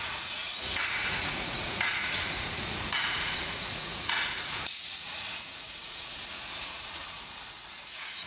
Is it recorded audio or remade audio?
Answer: remade